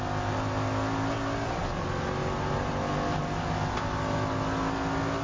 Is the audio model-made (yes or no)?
no